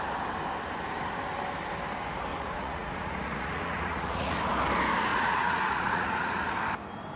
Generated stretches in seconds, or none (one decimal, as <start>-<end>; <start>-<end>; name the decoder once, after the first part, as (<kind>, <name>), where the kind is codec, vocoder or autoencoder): 2.3-4.4 (vocoder, Vocos); 5.1-6.5